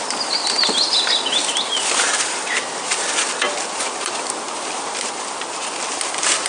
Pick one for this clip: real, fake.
real